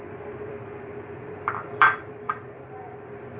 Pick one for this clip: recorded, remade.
remade